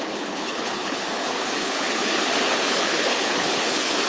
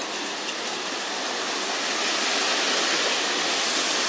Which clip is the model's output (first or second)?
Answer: first